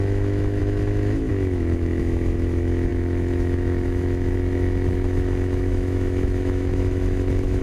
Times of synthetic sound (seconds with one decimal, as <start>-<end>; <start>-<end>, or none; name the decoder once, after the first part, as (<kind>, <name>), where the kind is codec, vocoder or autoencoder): 0.0-7.6 (autoencoder, DAC-VAE)